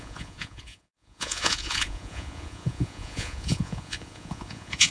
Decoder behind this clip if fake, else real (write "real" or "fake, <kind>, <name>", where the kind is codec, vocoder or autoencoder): fake, vocoder, Vocos